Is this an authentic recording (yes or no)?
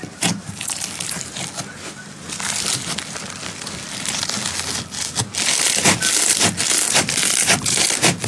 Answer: yes